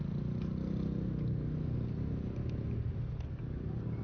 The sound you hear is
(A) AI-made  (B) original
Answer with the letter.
B